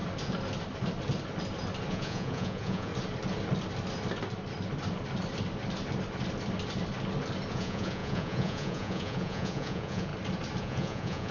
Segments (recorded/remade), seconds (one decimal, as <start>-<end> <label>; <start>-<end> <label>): 0.0-1.9 recorded; 1.9-2.9 remade; 2.9-7.5 recorded; 7.5-10.1 remade; 10.1-10.6 recorded; 10.6-11.3 remade

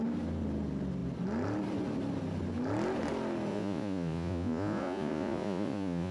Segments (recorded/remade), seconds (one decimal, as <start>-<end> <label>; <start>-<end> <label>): 0.0-3.5 recorded; 3.5-6.1 remade

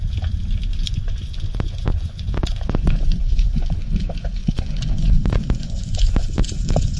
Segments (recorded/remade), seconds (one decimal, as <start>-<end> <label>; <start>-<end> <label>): 0.0-0.7 recorded; 0.7-3.9 remade; 3.9-4.4 recorded; 4.4-7.0 remade

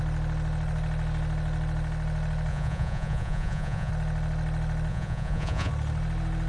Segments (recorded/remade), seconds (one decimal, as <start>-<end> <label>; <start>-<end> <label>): 0.0-2.5 recorded; 2.5-3.9 remade; 3.9-4.9 recorded; 4.9-5.7 remade; 5.7-6.5 recorded

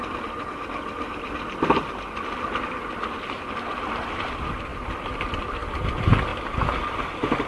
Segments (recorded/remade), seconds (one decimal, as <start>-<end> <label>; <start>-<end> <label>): 0.0-7.5 recorded

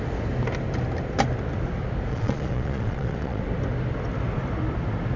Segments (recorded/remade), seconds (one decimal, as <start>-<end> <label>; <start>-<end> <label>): 0.0-2.1 recorded; 2.1-3.4 remade; 3.4-5.2 recorded